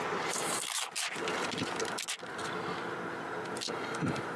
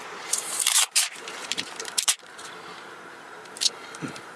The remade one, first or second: second